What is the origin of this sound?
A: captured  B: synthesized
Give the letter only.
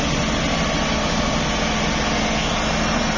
A